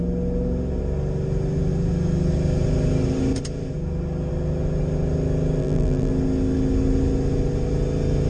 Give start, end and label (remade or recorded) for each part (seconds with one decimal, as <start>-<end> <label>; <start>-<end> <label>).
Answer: 0.0-5.6 recorded; 5.6-6.1 remade; 6.1-8.3 recorded